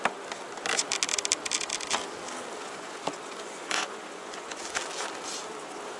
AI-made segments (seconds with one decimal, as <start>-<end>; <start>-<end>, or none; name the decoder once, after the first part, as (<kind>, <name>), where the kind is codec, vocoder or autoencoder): 2.6-4.6 (vocoder, Vocos)